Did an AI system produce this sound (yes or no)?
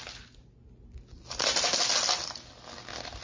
no